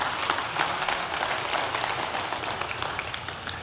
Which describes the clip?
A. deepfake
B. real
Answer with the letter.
B